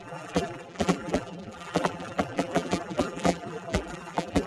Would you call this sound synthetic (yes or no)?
yes